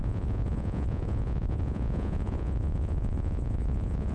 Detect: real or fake fake